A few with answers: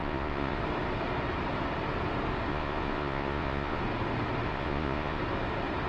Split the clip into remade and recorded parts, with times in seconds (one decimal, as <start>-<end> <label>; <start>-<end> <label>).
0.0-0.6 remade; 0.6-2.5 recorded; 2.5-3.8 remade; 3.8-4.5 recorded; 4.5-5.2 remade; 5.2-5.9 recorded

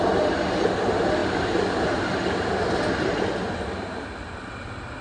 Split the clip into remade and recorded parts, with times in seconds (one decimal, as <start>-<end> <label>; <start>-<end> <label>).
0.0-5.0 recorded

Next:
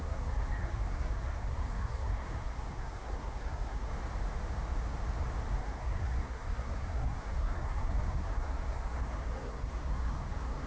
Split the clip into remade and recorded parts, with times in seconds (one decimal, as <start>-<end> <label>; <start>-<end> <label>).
0.0-3.9 remade; 3.9-5.6 recorded; 5.6-10.7 remade

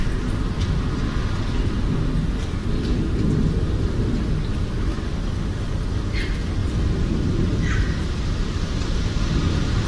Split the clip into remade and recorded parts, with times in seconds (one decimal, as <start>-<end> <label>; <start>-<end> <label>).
0.0-6.6 recorded; 6.6-9.9 remade

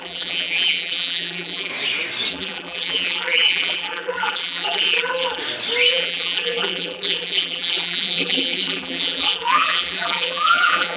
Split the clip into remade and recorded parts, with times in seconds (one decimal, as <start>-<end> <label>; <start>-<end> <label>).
0.0-1.7 remade; 1.7-2.3 recorded; 2.3-5.4 remade; 5.4-5.9 recorded; 5.9-11.0 remade